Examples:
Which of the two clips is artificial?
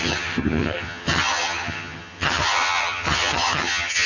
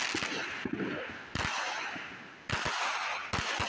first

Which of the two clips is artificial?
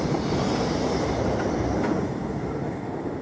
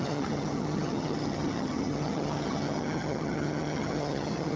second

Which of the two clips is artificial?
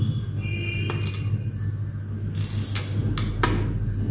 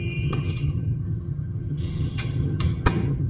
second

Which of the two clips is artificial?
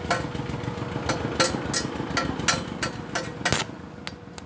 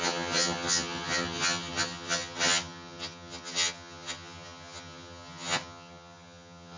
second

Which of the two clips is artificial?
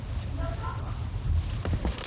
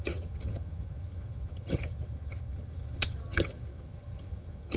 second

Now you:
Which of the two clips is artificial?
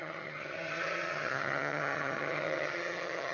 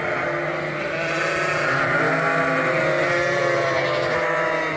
first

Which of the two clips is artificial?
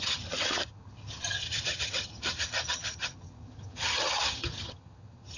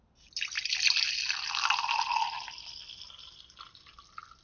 first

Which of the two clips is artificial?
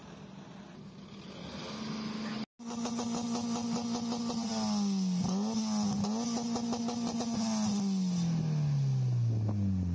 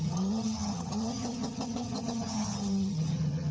second